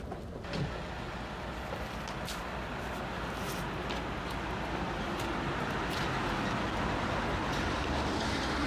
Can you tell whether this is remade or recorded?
recorded